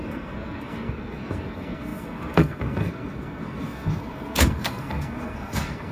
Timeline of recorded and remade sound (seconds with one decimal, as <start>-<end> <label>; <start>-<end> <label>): 0.0-5.9 remade